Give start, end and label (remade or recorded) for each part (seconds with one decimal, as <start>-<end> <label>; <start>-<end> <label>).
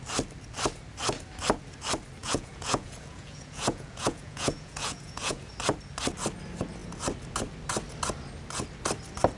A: 0.0-2.2 recorded; 2.2-5.5 remade; 5.5-9.4 recorded